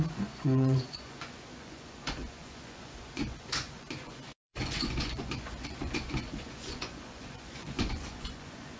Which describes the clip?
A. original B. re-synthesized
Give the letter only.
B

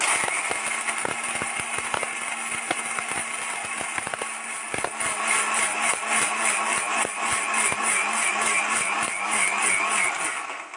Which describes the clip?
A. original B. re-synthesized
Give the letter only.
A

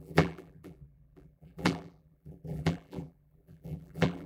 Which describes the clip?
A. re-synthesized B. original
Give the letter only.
A